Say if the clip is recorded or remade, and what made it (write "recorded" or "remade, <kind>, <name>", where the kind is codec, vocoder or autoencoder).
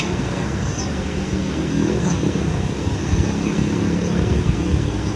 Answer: remade, codec, SNAC